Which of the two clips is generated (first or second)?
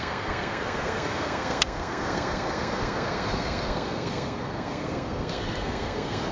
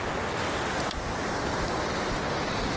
first